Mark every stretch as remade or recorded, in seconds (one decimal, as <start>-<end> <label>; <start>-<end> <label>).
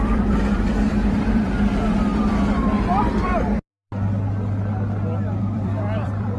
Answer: 0.0-2.1 remade; 2.1-5.4 recorded; 5.4-6.4 remade